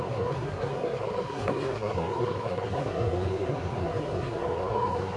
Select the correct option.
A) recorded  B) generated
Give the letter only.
B